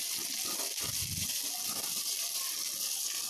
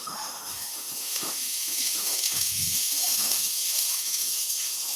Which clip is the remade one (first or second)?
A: second